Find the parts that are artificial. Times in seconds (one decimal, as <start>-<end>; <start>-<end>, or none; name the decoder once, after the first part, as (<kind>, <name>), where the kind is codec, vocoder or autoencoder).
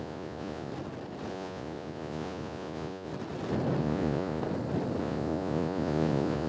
0.0-0.7 (vocoder, Vocos); 1.3-3.1; 3.8-4.4; 5.0-6.5